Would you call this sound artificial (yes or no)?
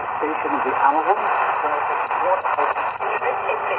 yes